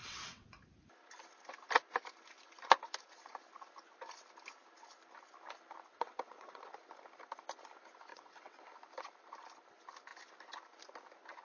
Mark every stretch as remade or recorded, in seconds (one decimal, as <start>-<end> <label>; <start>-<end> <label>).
0.0-0.6 remade; 0.6-5.9 recorded; 5.9-6.7 remade; 6.7-8.1 recorded; 8.1-8.7 remade; 8.7-11.4 recorded